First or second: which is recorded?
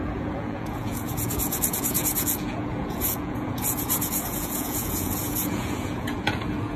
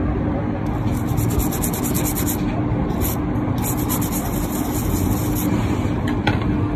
second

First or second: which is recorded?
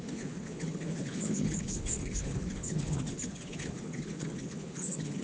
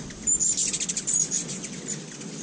second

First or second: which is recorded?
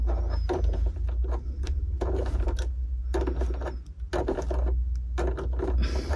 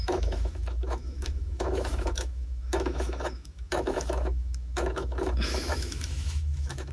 first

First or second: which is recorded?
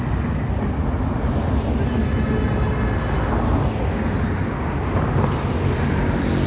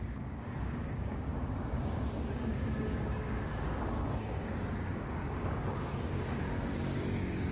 first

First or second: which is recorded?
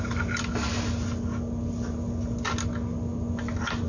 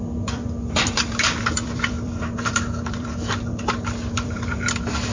first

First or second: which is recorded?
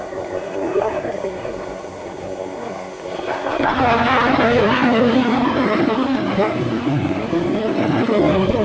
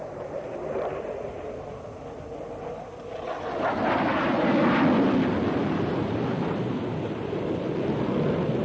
second